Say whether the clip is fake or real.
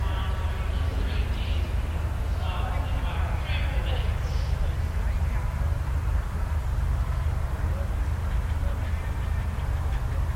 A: real